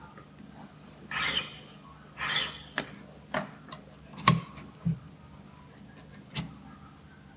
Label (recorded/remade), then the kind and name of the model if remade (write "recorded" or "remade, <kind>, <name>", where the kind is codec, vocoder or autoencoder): recorded